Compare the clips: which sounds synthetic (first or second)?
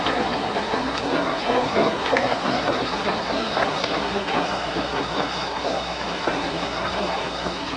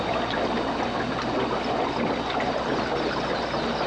first